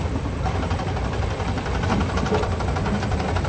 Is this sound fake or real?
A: real